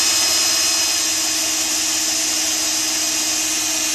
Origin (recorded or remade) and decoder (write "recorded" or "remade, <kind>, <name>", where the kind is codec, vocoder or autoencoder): recorded